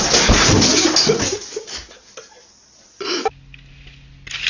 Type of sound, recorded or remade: recorded